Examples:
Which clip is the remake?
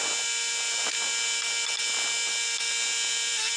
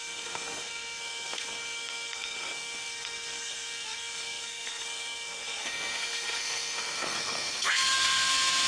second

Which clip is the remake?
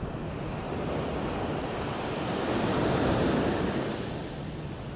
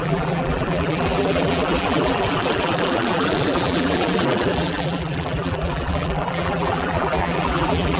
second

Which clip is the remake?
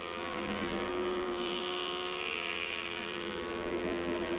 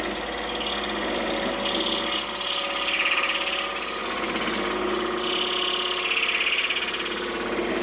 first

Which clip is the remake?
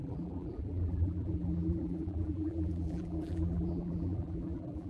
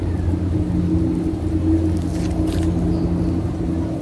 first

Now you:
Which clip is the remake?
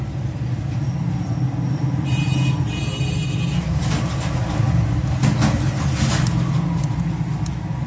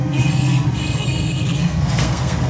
second